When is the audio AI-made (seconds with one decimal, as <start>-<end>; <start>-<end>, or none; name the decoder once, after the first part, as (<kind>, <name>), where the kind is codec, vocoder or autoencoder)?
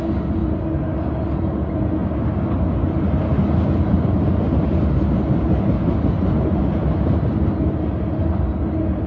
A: none